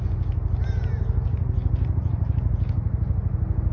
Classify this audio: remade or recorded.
recorded